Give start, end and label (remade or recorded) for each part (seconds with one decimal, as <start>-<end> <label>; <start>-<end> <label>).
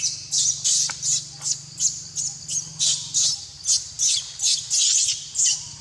0.0-5.8 recorded